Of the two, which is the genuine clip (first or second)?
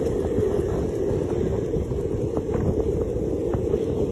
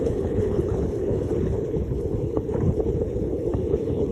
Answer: first